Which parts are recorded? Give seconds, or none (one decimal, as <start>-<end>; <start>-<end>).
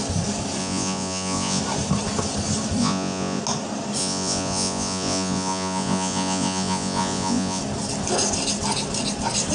0.0-0.6; 1.6-2.8; 3.4-4.0; 7.6-9.5